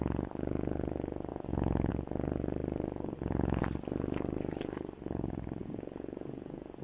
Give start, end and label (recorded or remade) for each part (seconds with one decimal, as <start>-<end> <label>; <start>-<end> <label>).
0.0-1.3 recorded; 1.3-1.9 remade; 1.9-5.6 recorded; 5.6-6.8 remade